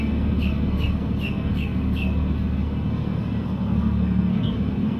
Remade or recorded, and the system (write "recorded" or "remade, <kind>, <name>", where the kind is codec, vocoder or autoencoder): remade, codec, SNAC